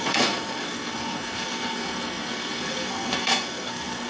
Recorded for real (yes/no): no